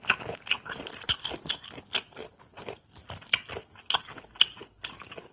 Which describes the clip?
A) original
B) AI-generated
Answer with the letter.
A